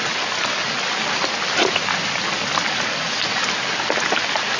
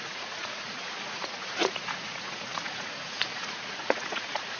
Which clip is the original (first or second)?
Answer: first